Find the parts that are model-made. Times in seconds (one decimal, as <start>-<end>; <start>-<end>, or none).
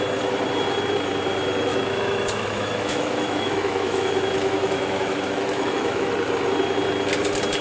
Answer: 1.7-6.1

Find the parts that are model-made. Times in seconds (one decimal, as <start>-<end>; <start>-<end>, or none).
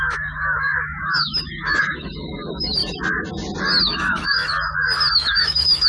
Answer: 0.0-2.8; 3.8-4.4; 5.1-5.9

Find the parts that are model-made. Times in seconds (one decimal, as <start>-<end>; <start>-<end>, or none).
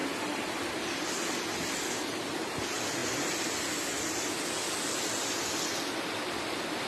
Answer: none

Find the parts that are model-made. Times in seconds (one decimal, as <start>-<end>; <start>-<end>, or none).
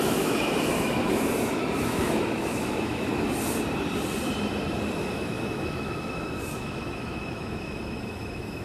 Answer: 0.0-3.1; 5.0-8.6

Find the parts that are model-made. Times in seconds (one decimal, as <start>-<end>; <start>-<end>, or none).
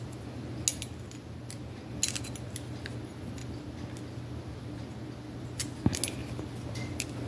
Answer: none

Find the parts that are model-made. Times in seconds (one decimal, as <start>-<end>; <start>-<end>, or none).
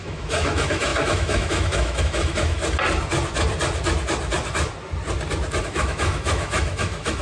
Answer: 0.0-2.6; 5.6-7.2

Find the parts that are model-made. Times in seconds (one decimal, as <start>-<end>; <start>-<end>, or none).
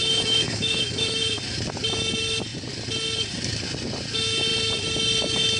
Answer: 0.0-1.4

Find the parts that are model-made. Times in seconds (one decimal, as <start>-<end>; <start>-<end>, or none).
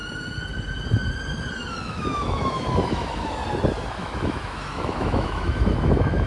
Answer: 1.7-3.4; 3.9-6.3